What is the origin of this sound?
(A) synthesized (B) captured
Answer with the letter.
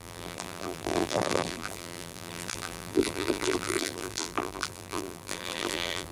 A